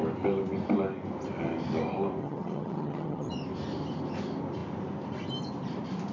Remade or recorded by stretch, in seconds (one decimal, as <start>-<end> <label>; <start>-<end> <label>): 0.0-2.2 recorded; 2.2-3.3 remade; 3.3-6.1 recorded